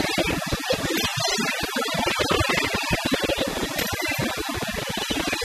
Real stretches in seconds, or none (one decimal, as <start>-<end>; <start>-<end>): 0.0-5.4